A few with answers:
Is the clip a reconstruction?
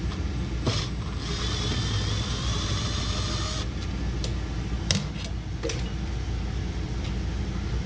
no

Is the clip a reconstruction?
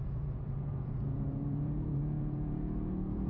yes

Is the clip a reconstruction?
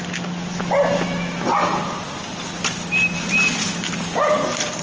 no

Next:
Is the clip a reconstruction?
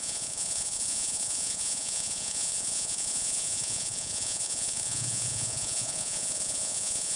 yes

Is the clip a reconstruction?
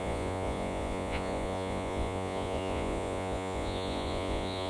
yes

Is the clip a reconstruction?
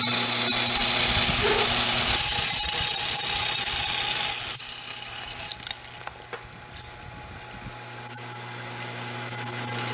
no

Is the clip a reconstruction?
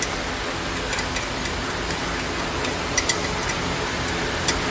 no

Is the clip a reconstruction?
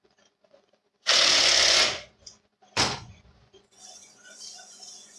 yes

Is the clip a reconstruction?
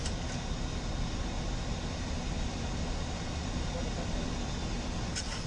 no